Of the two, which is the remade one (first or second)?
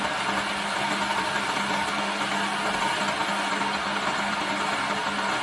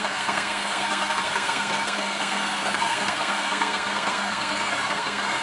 second